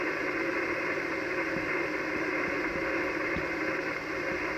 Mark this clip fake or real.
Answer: real